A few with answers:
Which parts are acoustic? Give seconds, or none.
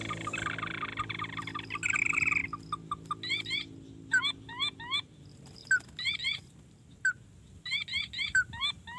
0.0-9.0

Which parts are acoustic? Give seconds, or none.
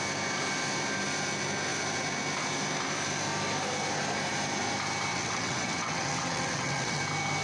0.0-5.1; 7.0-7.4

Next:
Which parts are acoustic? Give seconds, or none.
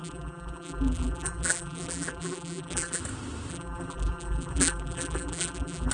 3.0-3.5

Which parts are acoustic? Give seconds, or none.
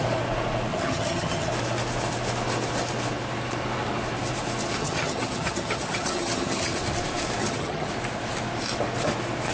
0.0-0.7; 1.5-4.8; 6.8-7.4; 7.9-9.5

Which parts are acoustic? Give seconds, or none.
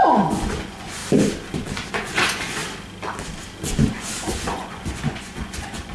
1.0-1.9; 2.6-3.9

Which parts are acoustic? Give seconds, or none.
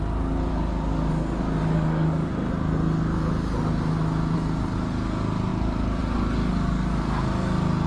0.0-0.5; 1.1-1.6; 2.3-6.4; 7.0-7.9